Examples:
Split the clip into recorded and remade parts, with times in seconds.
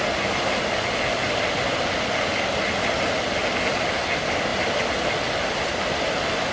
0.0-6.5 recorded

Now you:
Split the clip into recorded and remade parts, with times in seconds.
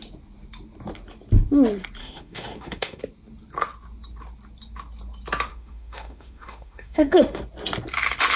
0.0-2.0 recorded; 2.0-3.0 remade; 3.0-5.5 recorded; 5.5-7.4 remade; 7.4-8.4 recorded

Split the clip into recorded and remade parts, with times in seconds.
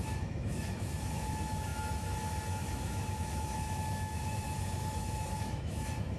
0.0-6.2 remade